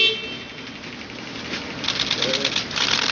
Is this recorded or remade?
recorded